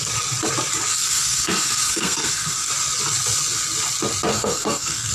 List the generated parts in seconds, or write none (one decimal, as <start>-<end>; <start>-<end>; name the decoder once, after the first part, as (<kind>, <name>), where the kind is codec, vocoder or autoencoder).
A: 0.9-2.7 (codec, SNAC); 4.3-5.1